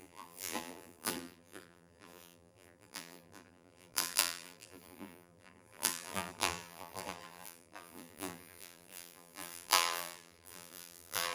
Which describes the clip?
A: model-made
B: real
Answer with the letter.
A